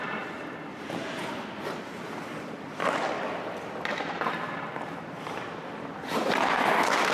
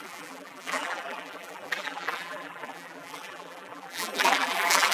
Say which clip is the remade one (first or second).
second